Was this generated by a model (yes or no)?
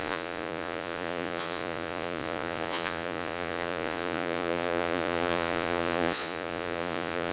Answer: yes